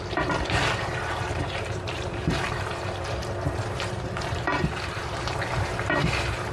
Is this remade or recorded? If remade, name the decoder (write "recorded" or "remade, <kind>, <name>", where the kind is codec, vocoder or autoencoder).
remade, vocoder, BigVGAN v2